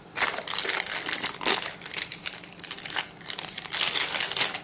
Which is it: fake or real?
real